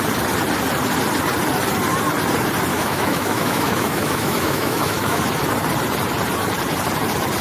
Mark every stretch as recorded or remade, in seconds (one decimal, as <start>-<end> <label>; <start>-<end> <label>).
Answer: 0.0-2.7 recorded; 2.7-5.2 remade; 5.2-7.4 recorded